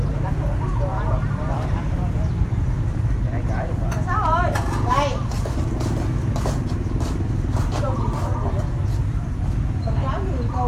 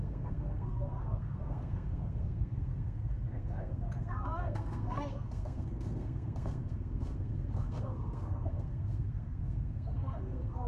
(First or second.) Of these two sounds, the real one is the first